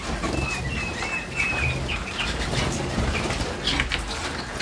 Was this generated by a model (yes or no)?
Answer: no